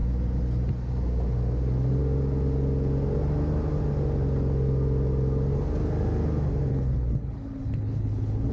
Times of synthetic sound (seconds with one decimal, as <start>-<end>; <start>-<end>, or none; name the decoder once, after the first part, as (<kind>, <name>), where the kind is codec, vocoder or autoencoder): 6.7-8.5 (codec, HILCodec)